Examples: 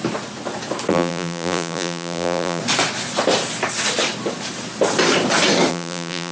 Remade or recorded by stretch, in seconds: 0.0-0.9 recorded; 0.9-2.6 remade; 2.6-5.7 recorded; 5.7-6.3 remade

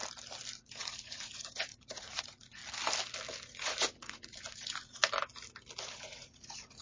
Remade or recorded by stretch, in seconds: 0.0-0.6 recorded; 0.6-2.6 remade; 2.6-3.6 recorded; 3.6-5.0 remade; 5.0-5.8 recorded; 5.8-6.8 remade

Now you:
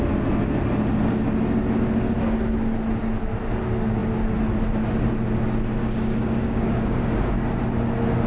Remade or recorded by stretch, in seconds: 0.0-5.8 recorded; 5.8-7.3 remade; 7.3-8.3 recorded

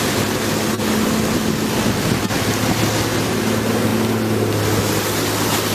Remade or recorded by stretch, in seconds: 0.0-5.7 recorded